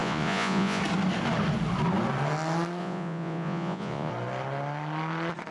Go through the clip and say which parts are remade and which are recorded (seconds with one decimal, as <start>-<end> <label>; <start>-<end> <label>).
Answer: 0.0-0.8 remade; 0.8-2.8 recorded; 2.8-4.1 remade; 4.1-5.5 recorded